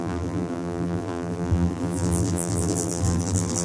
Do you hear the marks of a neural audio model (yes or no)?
yes